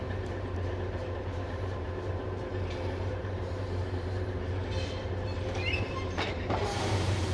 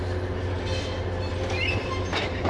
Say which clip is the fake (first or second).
first